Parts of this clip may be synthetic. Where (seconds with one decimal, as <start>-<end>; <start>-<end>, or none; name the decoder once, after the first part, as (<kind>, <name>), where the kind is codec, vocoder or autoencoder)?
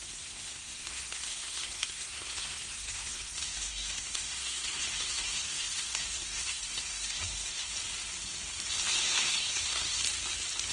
0.0-7.7 (codec, SNAC); 8.9-10.0